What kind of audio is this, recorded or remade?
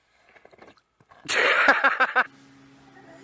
recorded